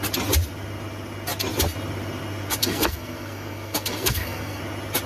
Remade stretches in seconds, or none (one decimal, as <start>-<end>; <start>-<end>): 2.6-4.6